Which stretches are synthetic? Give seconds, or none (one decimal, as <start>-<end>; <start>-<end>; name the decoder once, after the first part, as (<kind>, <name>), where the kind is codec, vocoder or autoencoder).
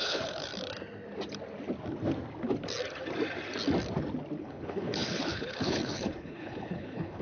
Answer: 0.0-0.5 (codec, HILCodec); 4.4-7.2